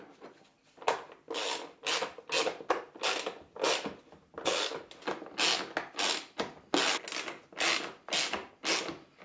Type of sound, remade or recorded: recorded